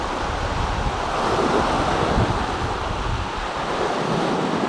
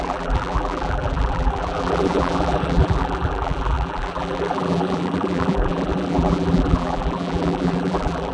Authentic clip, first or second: first